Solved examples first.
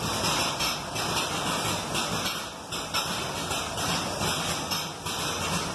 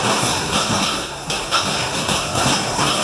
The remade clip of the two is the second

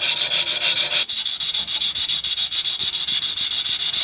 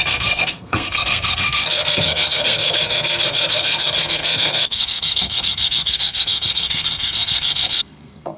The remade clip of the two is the second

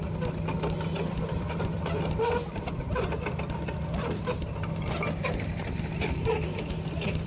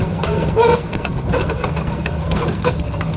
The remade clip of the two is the second